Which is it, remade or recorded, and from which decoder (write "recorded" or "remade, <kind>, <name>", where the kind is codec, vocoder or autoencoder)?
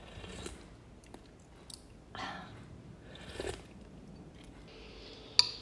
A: recorded